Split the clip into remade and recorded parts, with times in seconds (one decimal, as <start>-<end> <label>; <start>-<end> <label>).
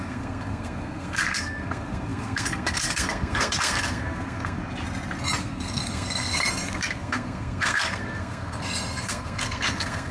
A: 0.0-4.6 remade; 4.6-5.4 recorded; 5.4-10.1 remade